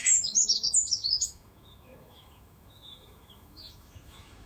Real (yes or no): no